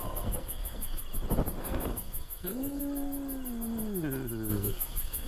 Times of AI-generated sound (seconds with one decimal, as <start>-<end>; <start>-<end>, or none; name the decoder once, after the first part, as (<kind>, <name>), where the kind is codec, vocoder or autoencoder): 0.0-1.0 (codec, SNAC); 1.6-2.8; 4.5-5.3